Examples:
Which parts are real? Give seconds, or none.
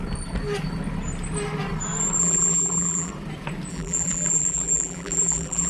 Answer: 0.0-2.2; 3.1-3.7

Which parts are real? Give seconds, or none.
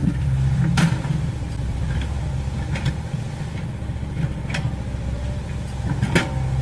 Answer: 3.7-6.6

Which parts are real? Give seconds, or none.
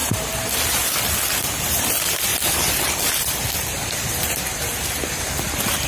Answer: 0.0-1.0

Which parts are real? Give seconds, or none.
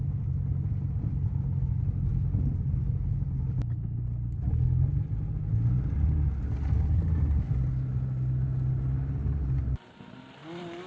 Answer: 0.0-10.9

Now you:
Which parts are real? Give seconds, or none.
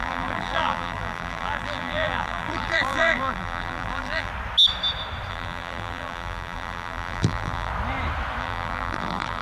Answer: 4.3-5.3; 7.7-8.4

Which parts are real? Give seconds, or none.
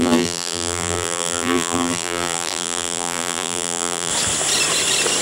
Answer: 4.1-5.2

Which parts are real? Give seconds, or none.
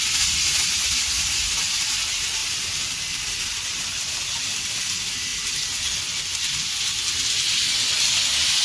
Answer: 0.0-2.4; 4.8-8.6